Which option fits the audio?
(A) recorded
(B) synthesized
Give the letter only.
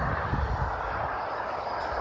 A